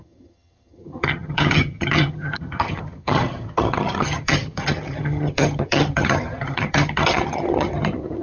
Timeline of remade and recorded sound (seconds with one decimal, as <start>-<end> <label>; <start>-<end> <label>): 0.0-8.2 remade